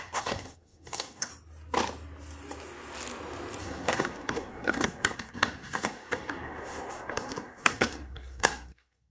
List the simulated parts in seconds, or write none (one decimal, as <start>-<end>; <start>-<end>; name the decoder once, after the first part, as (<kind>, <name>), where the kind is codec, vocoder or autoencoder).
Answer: 0.0-1.3 (codec, SNAC); 3.6-9.1